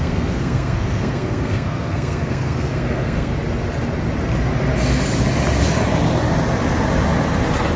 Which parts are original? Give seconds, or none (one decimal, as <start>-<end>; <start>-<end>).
3.3-7.8